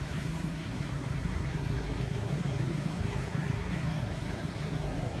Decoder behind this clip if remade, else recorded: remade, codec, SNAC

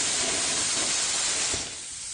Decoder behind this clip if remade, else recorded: recorded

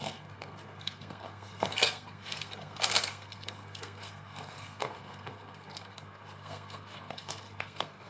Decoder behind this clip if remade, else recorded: remade, codec, SNAC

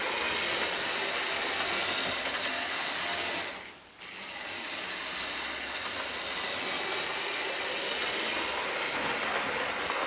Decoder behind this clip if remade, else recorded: recorded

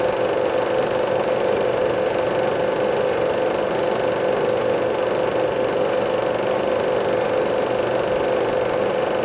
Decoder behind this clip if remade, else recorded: recorded